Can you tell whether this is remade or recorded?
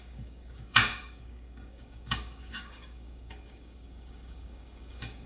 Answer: remade